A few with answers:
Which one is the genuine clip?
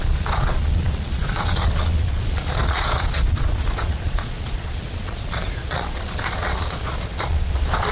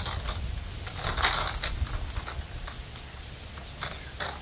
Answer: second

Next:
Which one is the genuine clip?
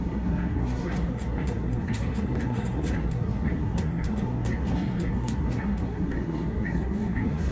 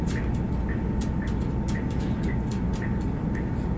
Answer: second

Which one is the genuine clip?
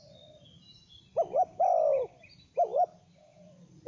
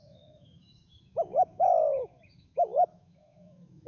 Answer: first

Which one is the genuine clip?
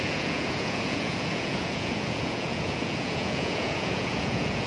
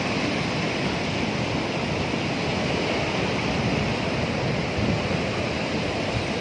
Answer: second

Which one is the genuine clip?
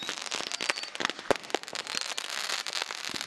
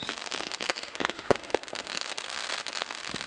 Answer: first